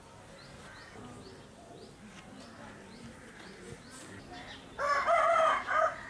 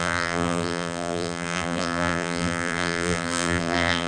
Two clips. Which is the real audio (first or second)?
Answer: first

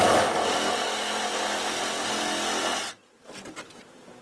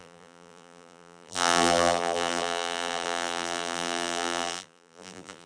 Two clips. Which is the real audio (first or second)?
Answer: first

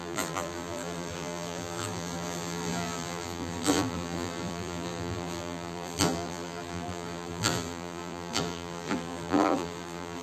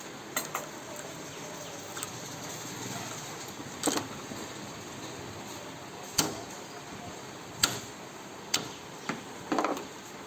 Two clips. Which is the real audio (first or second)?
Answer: second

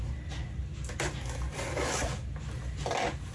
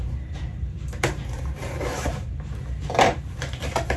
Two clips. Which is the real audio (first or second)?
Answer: first